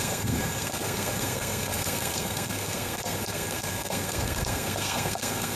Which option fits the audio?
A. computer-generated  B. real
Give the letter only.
A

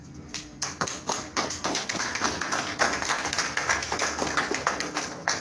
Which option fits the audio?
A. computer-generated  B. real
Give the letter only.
A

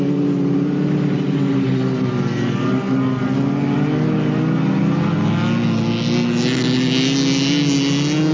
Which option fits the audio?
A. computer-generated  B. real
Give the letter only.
B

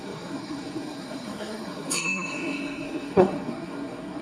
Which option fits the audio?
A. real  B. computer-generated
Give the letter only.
B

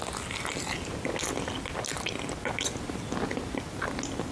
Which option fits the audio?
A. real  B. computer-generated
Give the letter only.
A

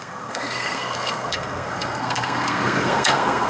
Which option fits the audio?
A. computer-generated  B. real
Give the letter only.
A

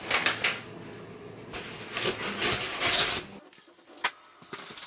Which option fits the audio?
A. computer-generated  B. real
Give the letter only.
B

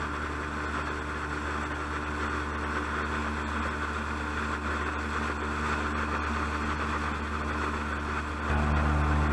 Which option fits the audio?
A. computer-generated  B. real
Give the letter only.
B